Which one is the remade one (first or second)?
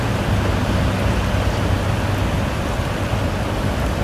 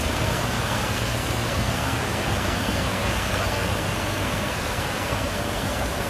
second